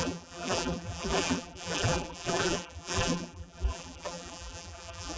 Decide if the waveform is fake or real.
fake